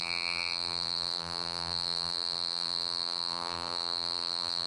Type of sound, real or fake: fake